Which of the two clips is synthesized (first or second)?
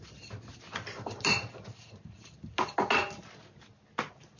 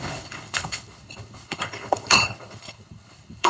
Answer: second